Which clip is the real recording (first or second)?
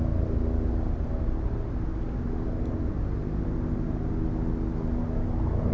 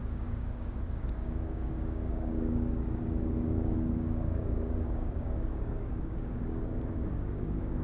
first